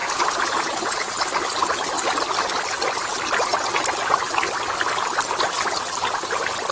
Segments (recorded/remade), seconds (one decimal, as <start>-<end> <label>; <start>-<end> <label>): 0.0-1.0 remade; 1.0-6.7 recorded